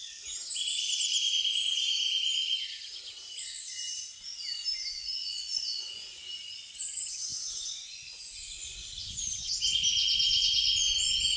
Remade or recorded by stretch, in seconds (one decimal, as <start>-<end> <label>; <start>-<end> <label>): 0.0-4.9 recorded; 4.9-11.4 remade